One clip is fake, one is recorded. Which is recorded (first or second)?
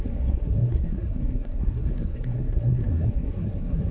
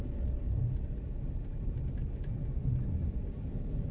second